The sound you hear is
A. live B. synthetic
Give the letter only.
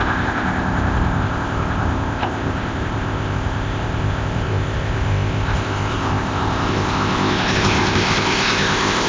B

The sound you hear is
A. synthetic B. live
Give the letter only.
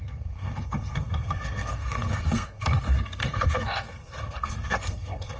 A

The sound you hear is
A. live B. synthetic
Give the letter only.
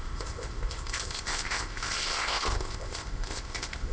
B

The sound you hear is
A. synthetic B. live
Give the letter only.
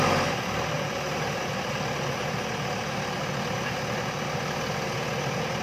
B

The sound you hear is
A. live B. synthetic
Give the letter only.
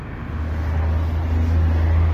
A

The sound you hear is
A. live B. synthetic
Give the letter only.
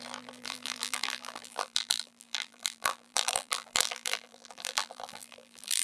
B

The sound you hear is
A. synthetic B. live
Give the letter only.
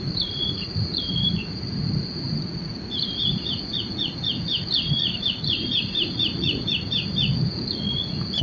A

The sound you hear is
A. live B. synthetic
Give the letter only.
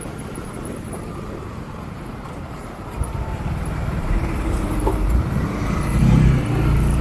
B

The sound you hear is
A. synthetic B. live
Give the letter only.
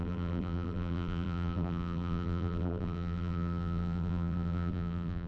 A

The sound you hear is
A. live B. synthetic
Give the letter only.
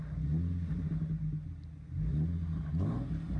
A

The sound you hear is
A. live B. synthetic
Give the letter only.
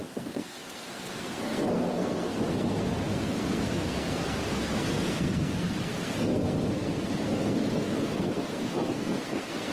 B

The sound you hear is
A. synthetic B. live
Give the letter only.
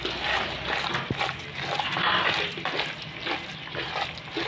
B